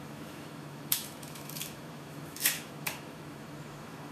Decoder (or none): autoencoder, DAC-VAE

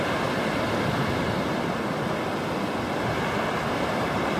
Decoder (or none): none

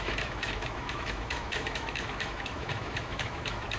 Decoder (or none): autoencoder, DAC-VAE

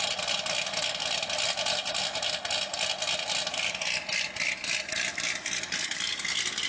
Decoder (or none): none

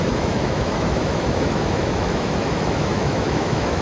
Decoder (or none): autoencoder, DAC-VAE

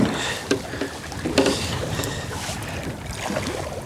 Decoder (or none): none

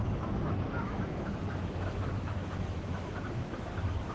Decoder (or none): autoencoder, DAC-VAE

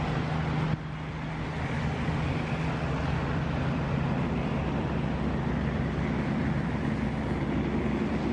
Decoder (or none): none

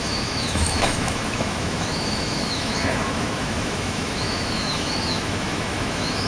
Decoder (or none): autoencoder, DAC-VAE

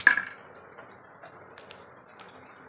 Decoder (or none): none